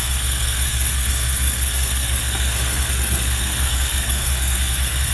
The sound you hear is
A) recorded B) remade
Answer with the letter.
B